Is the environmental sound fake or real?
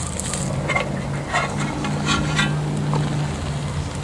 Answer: real